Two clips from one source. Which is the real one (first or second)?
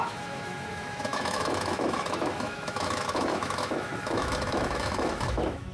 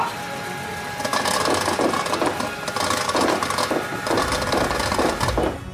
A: second